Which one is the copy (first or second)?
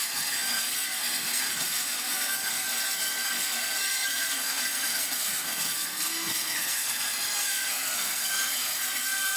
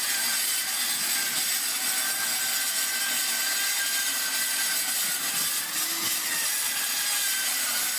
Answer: first